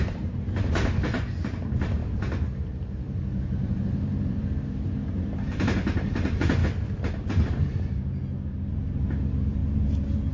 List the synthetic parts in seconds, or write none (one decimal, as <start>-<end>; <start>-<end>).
0.0-6.6; 8.7-10.3